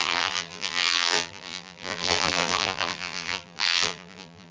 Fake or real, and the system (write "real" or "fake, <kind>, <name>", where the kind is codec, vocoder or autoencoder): fake, vocoder, BigVGAN v2